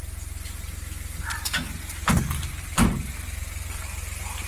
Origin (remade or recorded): recorded